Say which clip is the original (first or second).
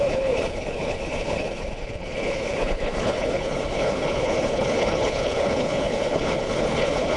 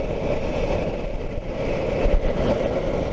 second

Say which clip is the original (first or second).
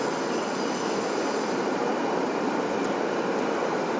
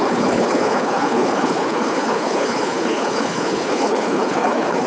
first